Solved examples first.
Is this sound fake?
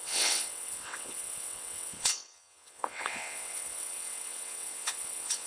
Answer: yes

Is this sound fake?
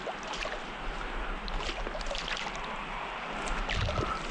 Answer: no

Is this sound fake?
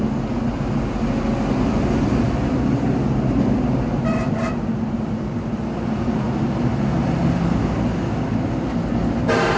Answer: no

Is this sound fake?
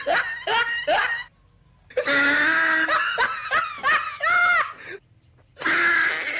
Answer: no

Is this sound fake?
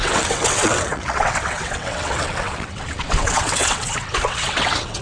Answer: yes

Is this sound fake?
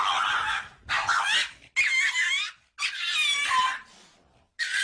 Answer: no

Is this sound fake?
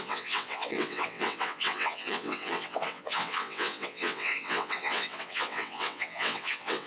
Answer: yes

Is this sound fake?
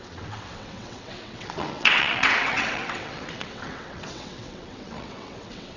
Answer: yes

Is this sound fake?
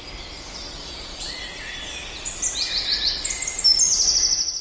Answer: no